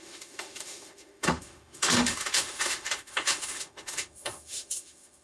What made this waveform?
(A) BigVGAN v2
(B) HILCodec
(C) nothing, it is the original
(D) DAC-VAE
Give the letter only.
D